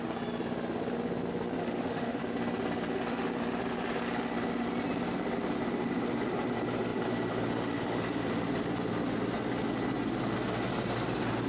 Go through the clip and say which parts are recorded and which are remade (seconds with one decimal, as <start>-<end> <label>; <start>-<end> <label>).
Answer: 0.0-1.6 recorded; 1.6-2.2 remade; 2.2-11.5 recorded